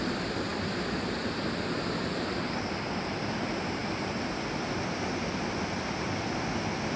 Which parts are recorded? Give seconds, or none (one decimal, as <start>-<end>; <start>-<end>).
0.0-7.0